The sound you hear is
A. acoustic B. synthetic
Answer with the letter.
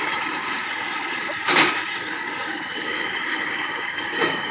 B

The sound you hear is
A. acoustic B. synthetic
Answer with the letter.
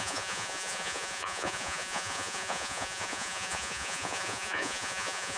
B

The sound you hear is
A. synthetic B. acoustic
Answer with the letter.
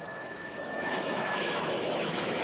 A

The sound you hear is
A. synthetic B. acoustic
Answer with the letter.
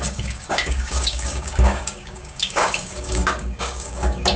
A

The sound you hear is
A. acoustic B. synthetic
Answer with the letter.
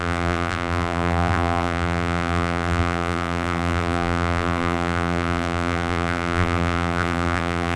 B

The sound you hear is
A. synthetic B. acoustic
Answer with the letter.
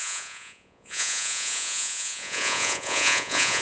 A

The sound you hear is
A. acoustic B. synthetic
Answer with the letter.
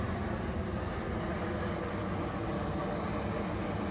A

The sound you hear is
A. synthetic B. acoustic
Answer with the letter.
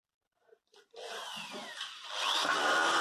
B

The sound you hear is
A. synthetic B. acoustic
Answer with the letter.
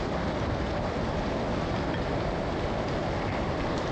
B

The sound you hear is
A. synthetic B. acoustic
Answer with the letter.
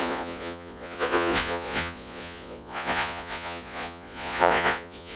A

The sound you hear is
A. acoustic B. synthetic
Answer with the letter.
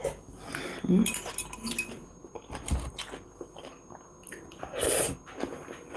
A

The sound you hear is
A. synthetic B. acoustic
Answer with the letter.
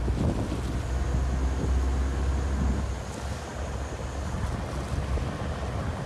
B